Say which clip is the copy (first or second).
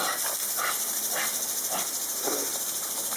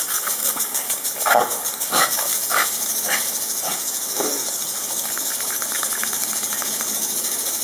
second